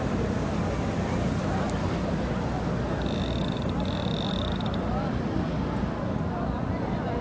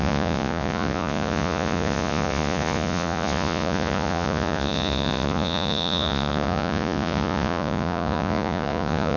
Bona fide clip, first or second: first